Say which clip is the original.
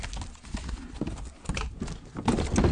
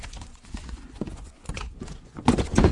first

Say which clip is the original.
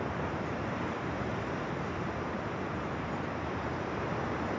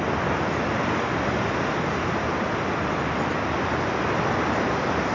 second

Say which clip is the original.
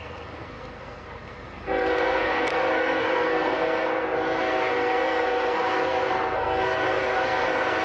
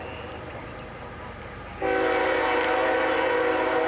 second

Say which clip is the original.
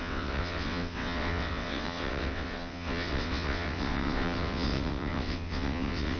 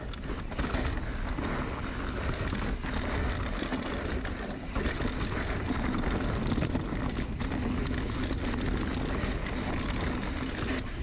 second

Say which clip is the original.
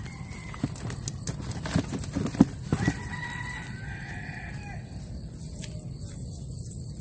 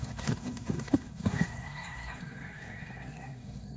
first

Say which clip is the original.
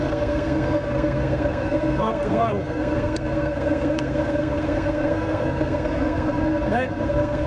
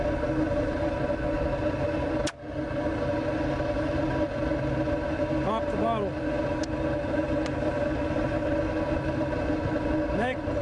second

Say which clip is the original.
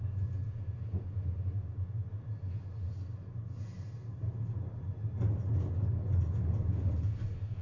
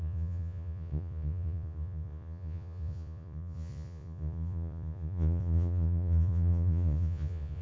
first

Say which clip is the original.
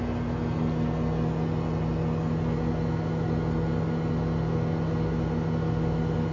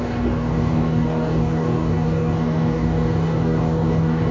first